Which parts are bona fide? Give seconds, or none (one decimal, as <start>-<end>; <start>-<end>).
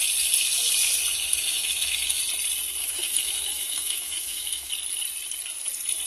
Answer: 0.0-1.1; 2.2-2.8; 4.7-6.1